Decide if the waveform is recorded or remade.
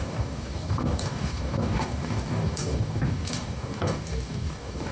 remade